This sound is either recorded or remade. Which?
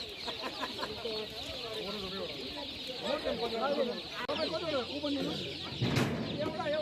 recorded